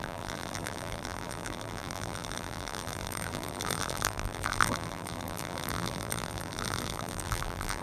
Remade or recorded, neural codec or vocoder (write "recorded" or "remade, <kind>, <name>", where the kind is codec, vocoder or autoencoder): remade, vocoder, BigVGAN v2